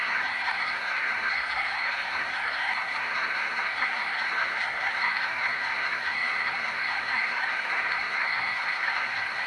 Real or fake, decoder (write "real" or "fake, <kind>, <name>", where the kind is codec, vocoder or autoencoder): fake, codec, SNAC